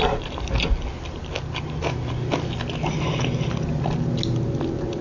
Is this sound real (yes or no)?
yes